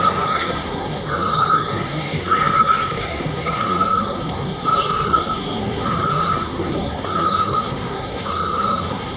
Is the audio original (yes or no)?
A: no